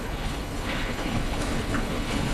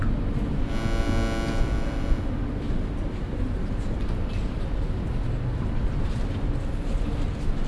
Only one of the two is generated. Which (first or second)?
first